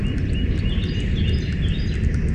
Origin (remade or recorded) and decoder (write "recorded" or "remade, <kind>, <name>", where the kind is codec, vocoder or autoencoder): recorded